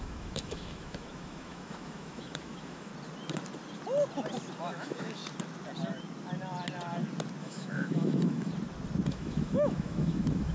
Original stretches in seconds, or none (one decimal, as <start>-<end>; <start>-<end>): 2.9-4.6; 5.2-7.4; 8.5-9.1